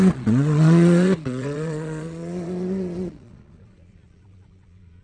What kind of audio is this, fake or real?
fake